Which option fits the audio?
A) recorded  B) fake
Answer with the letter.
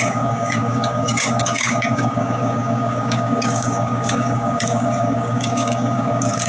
B